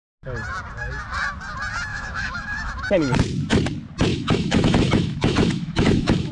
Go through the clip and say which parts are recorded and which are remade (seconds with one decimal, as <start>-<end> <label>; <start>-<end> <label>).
0.0-1.9 recorded; 1.9-2.7 remade; 2.7-4.1 recorded; 4.1-6.3 remade